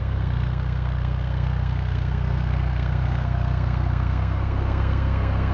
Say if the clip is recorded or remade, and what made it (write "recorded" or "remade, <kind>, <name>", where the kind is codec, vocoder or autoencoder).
remade, codec, SNAC